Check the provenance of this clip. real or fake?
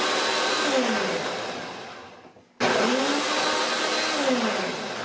real